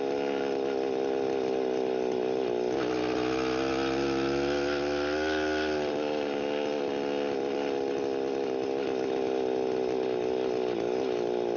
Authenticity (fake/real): real